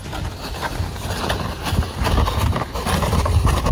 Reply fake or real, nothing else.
real